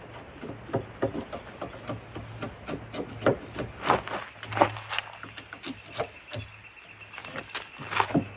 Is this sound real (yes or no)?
yes